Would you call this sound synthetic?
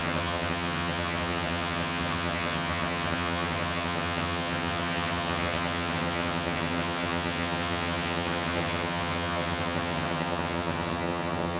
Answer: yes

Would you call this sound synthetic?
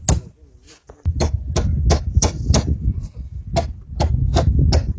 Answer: no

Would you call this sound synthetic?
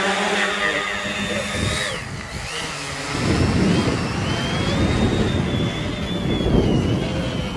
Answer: no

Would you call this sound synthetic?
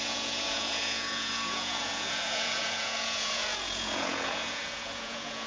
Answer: yes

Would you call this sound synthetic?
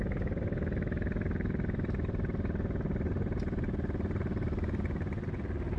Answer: no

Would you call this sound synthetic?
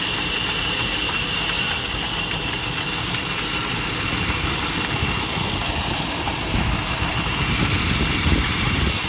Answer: no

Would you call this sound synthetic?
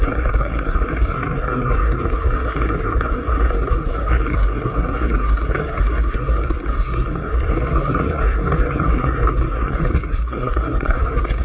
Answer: yes